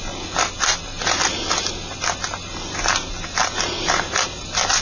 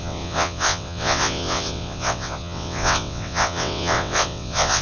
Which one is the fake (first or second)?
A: second